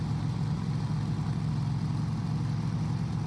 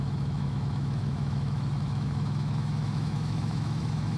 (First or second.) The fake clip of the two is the second